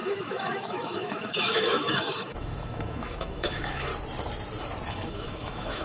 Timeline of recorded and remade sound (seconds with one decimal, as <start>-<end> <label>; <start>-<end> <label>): 0.0-3.9 remade; 3.9-4.9 recorded; 4.9-5.8 remade